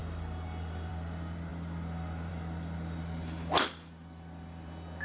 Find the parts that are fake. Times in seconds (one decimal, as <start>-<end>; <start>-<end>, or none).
none